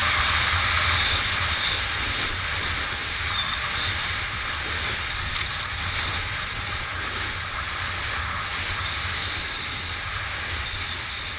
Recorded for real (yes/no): yes